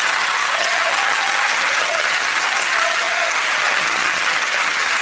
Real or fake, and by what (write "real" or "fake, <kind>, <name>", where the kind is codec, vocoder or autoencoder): fake, vocoder, HiFi-GAN